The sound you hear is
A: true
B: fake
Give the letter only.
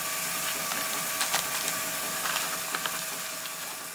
A